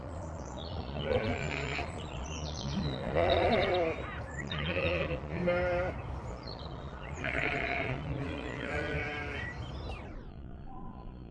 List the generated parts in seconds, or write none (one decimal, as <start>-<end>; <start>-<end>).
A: 0.0-3.7; 4.3-5.4; 6.3-9.0; 10.3-11.3